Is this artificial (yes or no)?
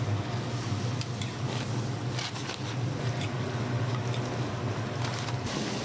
no